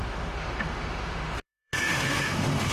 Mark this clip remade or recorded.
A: remade